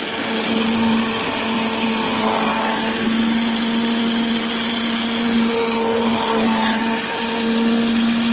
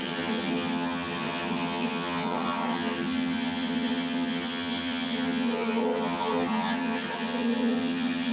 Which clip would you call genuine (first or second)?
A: first